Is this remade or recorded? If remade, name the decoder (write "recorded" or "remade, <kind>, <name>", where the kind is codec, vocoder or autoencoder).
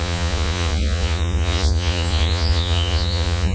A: remade, vocoder, Vocos